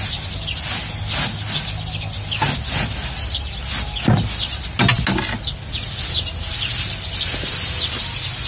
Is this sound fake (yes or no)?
no